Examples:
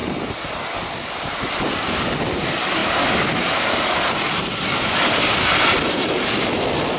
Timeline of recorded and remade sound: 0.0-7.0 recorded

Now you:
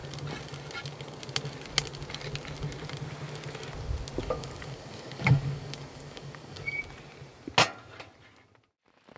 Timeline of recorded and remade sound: 0.0-4.2 recorded; 4.2-6.8 remade; 6.8-9.2 recorded

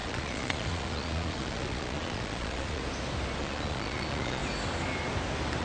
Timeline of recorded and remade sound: 0.0-2.8 remade; 2.8-3.4 recorded; 3.4-4.4 remade; 4.4-5.6 recorded

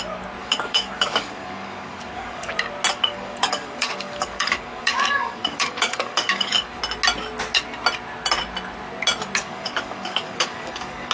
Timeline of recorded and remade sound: 0.0-0.4 recorded; 0.4-2.5 remade; 2.5-2.9 recorded; 2.9-6.8 remade; 6.8-9.4 recorded; 9.4-11.1 remade

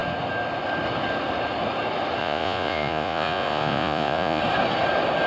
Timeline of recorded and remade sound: 0.0-2.2 recorded; 2.2-4.4 remade; 4.4-5.3 recorded

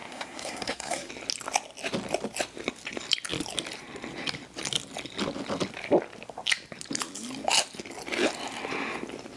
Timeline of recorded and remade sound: 0.0-1.1 remade; 1.1-9.4 recorded

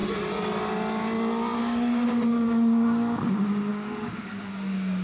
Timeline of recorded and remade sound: 0.0-1.6 recorded; 1.6-5.0 remade

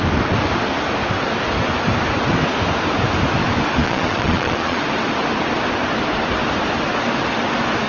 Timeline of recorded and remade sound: 0.0-3.8 recorded; 3.8-4.8 remade; 4.8-7.9 recorded